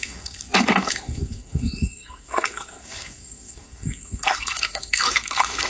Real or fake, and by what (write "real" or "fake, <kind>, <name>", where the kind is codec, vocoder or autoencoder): fake, codec, SNAC